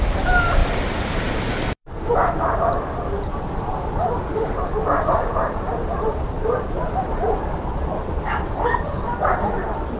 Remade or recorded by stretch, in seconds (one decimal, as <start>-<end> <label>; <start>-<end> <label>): 0.0-0.6 recorded; 0.6-2.6 remade; 2.6-3.3 recorded; 3.3-8.3 remade; 8.3-10.0 recorded